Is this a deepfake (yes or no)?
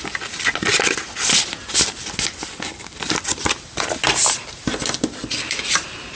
no